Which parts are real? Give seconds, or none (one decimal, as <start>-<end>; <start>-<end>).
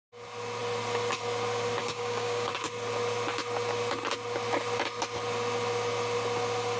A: 0.0-1.8; 2.5-6.8